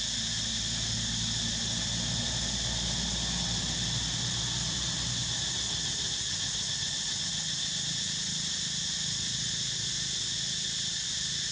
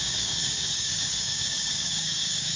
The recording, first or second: first